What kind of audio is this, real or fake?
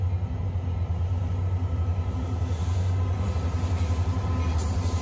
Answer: real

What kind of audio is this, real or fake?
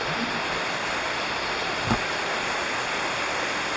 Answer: real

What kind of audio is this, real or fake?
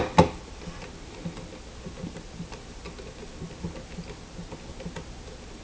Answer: real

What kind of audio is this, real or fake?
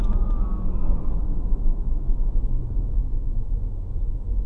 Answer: fake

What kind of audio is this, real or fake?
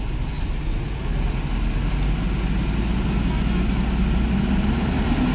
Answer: real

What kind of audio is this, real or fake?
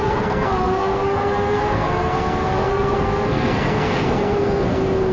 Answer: fake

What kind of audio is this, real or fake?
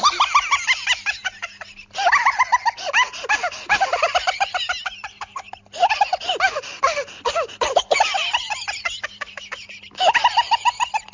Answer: real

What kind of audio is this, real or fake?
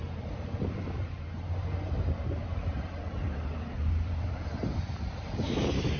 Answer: fake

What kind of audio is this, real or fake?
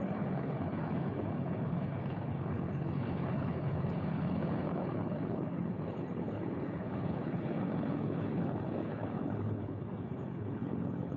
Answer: fake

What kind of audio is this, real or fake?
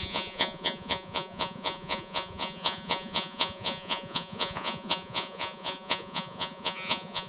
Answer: fake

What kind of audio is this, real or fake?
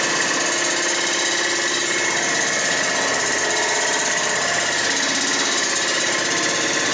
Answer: real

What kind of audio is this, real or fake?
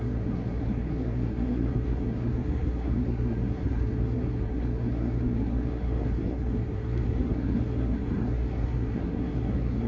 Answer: fake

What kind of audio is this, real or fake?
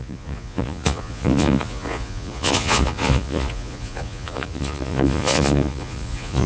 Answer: fake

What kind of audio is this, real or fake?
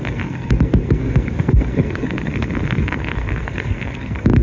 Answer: fake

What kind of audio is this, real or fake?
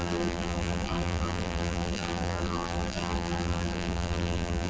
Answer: fake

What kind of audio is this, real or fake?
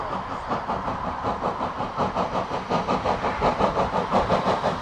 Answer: real